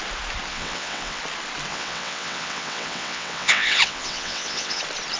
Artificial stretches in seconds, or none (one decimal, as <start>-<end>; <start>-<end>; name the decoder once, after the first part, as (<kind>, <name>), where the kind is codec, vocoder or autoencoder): 0.5-1.2 (vocoder, WaveNeXt); 1.7-4.8